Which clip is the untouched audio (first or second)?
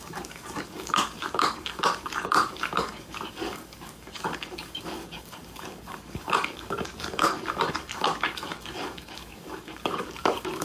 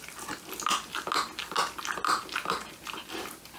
second